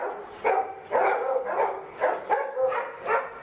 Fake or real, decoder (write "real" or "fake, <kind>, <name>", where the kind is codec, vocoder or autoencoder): real